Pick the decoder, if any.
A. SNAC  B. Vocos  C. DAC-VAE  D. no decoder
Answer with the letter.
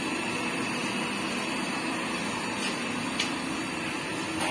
D